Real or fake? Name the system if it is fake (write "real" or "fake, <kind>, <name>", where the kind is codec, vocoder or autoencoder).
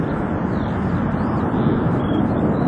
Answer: real